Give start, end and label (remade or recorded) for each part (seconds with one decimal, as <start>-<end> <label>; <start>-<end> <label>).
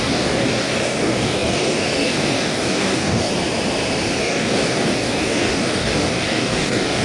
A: 0.0-3.3 remade; 3.3-4.2 recorded; 4.2-7.0 remade